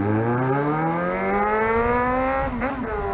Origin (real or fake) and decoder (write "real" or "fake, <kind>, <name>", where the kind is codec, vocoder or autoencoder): real